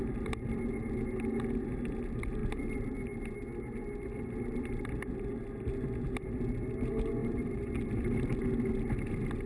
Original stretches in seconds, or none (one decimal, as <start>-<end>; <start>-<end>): 0.0-7.2; 7.7-9.5